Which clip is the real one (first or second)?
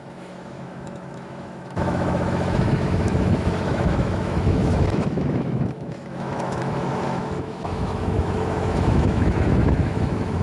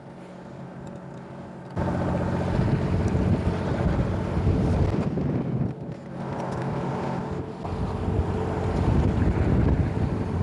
second